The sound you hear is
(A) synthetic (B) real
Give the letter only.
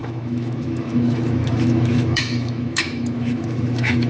A